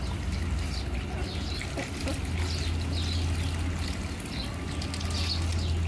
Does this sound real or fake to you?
real